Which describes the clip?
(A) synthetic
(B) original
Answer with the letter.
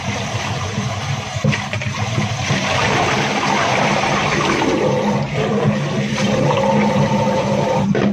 A